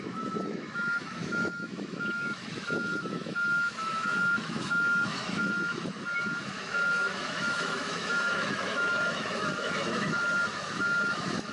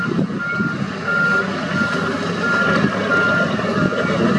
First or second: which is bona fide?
second